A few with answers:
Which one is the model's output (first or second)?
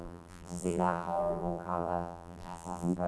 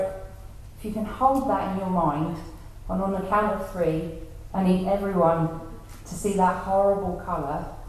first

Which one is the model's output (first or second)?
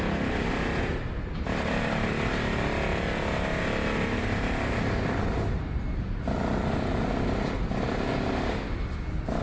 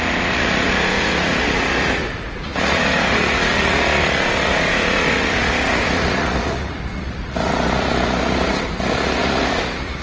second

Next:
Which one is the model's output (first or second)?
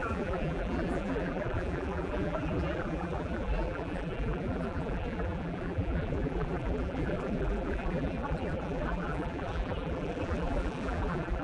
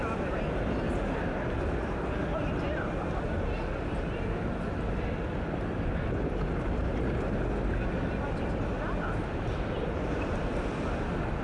first